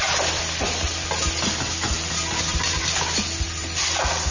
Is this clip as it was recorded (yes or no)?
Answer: yes